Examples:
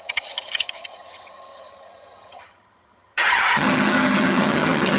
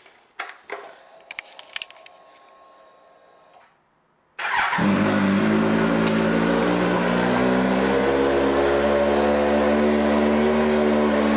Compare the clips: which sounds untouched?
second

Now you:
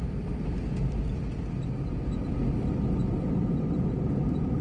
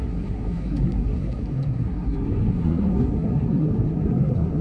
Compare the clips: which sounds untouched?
first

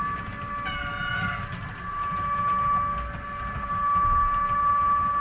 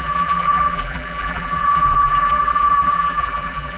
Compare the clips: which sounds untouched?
first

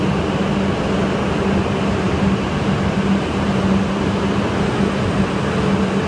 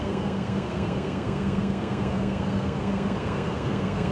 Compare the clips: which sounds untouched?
first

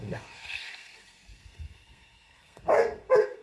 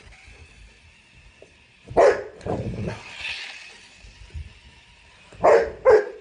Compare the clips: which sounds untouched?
second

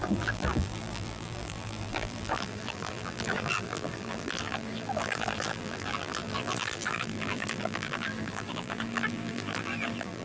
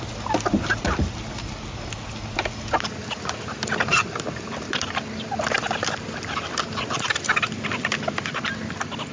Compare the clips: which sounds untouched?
second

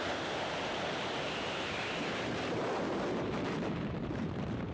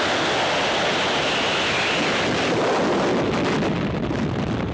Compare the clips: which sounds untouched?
second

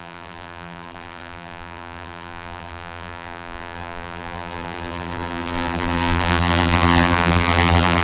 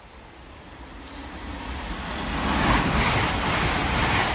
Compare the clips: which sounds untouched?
second